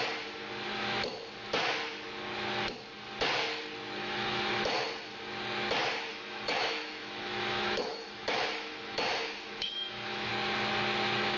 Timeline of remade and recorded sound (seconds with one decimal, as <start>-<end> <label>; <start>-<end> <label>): 0.0-4.0 recorded; 4.0-4.6 remade; 4.6-6.1 recorded; 6.1-10.3 remade; 10.3-11.4 recorded